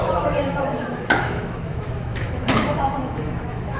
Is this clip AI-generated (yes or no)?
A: yes